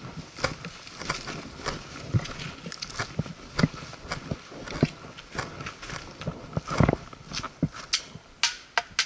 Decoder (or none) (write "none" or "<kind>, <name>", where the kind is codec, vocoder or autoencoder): none